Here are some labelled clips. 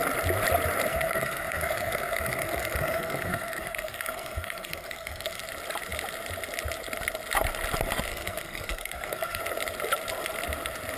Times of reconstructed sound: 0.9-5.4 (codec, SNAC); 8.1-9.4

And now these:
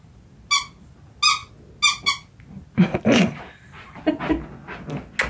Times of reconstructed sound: none

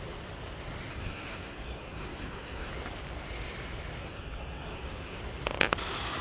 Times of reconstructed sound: 0.9-2.7 (codec, SNAC); 4.0-5.2

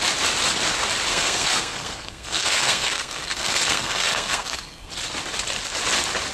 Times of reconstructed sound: 1.1-4.9 (codec, SNAC)

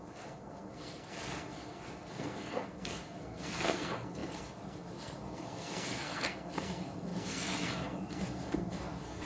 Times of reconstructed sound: 0.0-9.3 (codec, SNAC)

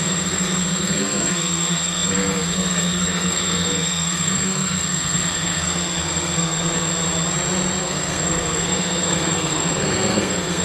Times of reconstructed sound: 0.0-6.9 (codec, SNAC); 7.8-10.6